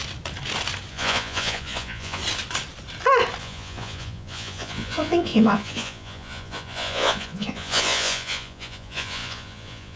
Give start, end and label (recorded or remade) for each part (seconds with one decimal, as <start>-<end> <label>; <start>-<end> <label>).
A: 0.0-0.9 recorded; 0.9-2.2 remade; 2.2-3.4 recorded; 3.4-10.0 remade